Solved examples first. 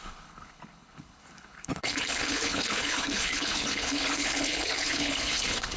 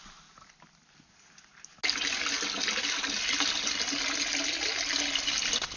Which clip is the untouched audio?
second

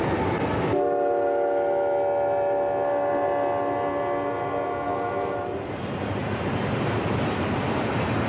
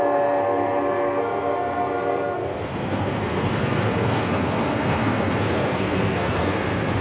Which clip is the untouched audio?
first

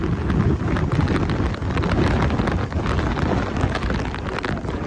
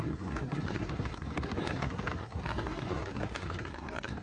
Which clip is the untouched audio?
first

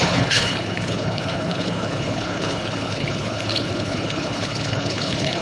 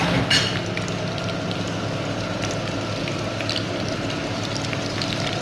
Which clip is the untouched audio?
second